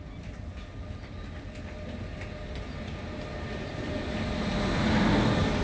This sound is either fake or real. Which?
real